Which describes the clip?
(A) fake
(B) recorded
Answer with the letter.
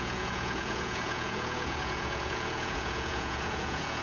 A